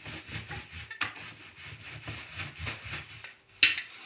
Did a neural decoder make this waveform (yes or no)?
no